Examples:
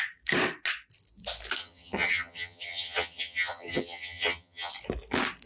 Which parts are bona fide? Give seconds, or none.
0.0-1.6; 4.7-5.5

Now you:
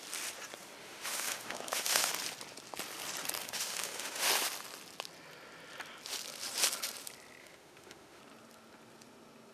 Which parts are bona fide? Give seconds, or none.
0.0-0.8; 2.1-3.4; 4.3-7.4; 8.2-9.5